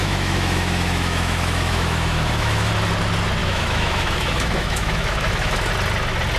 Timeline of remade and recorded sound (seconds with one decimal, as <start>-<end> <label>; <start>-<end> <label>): 0.0-2.7 remade; 2.7-3.4 recorded; 3.4-5.7 remade; 5.7-6.4 recorded